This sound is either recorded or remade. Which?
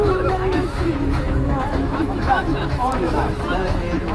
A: remade